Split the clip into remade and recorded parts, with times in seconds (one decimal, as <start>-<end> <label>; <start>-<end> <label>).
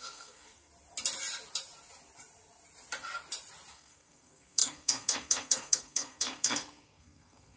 0.0-0.7 remade; 0.7-3.7 recorded; 3.7-7.6 remade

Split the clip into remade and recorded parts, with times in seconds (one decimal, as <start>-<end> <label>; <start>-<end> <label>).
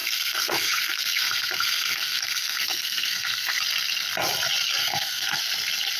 0.0-3.6 remade; 3.6-4.8 recorded; 4.8-5.4 remade; 5.4-6.0 recorded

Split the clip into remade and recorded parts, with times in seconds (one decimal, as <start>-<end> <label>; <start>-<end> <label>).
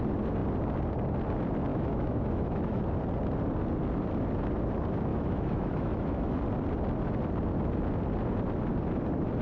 0.0-1.7 recorded; 1.7-2.8 remade; 2.8-5.1 recorded; 5.1-6.4 remade; 6.4-9.4 recorded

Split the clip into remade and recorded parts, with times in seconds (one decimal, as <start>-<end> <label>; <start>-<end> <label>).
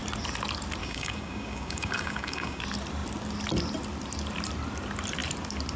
0.0-0.8 recorded; 0.8-2.6 remade; 2.6-5.8 recorded